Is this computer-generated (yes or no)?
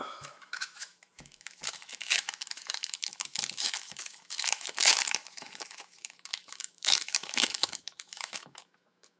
yes